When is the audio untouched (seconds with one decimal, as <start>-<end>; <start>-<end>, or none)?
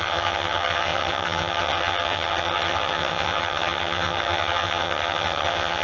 none